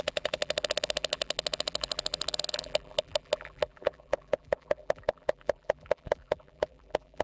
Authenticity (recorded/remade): remade